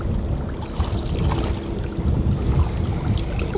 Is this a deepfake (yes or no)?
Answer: no